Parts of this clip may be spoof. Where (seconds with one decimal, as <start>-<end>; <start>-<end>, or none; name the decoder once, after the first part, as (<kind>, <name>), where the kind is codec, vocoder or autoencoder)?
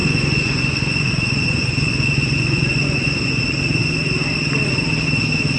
0.0-3.4 (vocoder, Vocos)